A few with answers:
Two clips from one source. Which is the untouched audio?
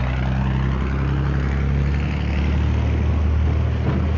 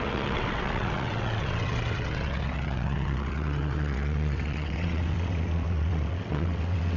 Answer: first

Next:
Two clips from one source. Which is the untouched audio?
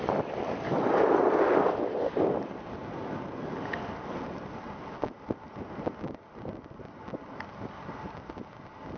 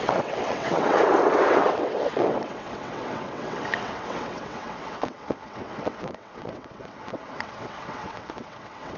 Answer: first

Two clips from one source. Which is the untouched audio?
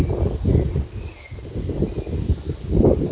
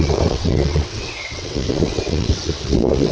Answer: first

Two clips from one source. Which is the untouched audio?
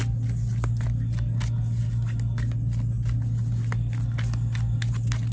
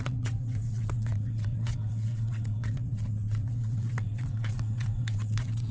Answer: first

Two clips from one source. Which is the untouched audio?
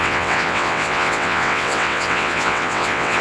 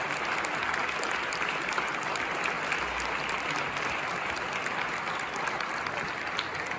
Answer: second